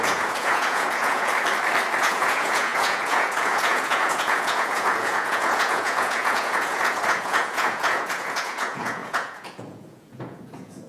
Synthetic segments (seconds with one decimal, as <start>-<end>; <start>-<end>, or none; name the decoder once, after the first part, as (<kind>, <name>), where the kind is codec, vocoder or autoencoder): 0.0-1.3 (vocoder, Vocos); 2.0-10.9